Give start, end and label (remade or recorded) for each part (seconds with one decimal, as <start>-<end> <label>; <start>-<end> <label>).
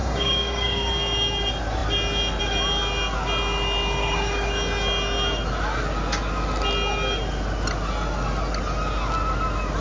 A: 0.0-0.9 remade; 0.9-4.0 recorded; 4.0-4.5 remade; 4.5-9.8 recorded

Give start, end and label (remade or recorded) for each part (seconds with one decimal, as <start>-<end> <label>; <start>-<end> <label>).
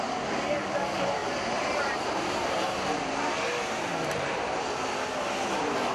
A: 0.0-1.2 recorded; 1.2-4.7 remade; 4.7-5.9 recorded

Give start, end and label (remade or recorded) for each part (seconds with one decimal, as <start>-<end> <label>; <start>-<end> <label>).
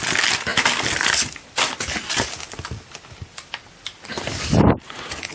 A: 0.0-0.5 recorded; 0.5-3.7 remade; 3.7-5.3 recorded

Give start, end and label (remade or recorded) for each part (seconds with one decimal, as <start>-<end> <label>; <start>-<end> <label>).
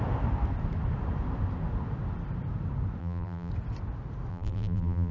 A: 0.0-3.0 recorded; 3.0-3.5 remade; 3.5-4.3 recorded; 4.3-5.1 remade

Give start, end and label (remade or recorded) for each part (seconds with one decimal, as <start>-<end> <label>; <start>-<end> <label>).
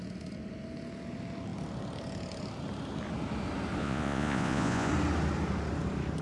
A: 0.0-3.8 recorded; 3.8-4.9 remade; 4.9-6.2 recorded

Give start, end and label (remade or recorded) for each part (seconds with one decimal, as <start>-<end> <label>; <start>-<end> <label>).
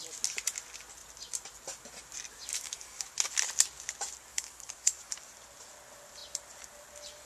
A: 0.0-2.5 recorded; 2.5-3.1 remade; 3.1-4.3 recorded; 4.3-5.1 remade; 5.1-7.3 recorded